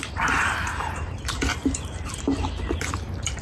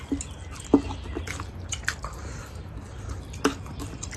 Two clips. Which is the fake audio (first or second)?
first